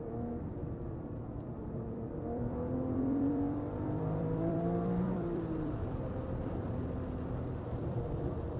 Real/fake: fake